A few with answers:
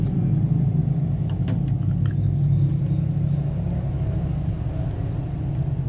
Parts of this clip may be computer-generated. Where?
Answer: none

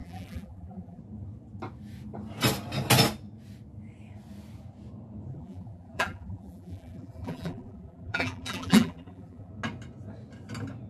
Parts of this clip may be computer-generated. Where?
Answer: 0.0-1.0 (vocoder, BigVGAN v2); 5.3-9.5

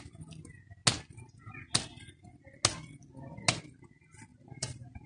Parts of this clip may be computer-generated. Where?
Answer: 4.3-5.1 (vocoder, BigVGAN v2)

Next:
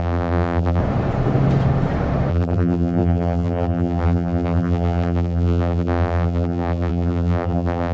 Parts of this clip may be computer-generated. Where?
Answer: 0.0-0.8 (vocoder, BigVGAN v2); 2.3-7.9

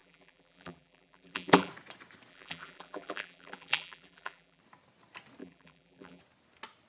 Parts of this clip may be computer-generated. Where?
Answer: 0.0-1.7 (vocoder, BigVGAN v2); 2.3-4.6; 5.4-6.2

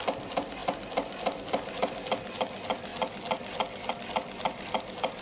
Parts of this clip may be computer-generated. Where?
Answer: none

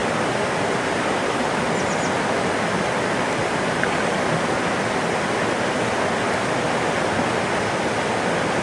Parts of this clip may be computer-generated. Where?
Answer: 0.0-2.4 (vocoder, BigVGAN v2)